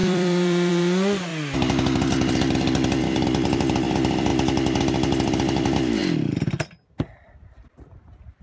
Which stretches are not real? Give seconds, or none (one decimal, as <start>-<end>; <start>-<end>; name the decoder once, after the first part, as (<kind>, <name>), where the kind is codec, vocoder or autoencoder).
0.0-1.3 (vocoder, BigVGAN v2); 3.0-4.3; 4.8-8.4